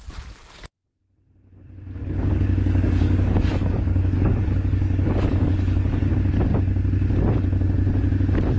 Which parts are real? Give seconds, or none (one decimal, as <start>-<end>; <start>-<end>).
0.0-2.0; 6.1-8.6